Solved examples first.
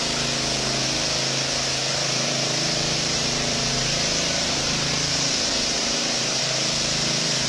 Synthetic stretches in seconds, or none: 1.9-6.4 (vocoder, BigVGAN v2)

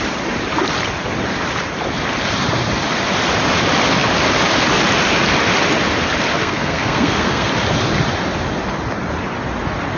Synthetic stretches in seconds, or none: 6.4-7.5 (codec, SNAC)

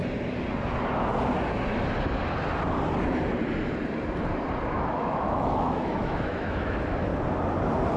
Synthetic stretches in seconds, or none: 4.7-7.1 (autoencoder, DAC-VAE)

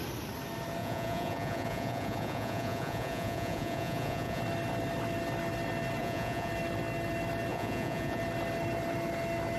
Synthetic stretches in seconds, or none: 0.8-4.4 (vocoder, Vocos); 6.0-6.5; 7.5-8.2

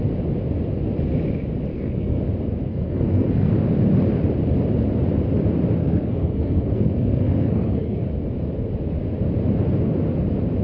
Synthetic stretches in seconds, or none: 1.7-2.2 (codec, SNAC); 2.7-3.5; 5.8-8.0

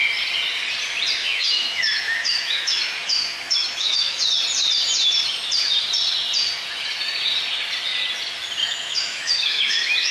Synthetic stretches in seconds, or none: 1.2-4.2 (autoencoder, DAC-VAE); 8.6-10.1

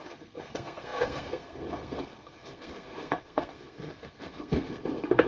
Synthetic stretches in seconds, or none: 0.0-5.3 (codec, SNAC)

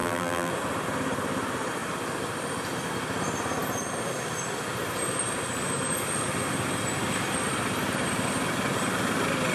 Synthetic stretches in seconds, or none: 0.0-0.5 (vocoder, BigVGAN v2)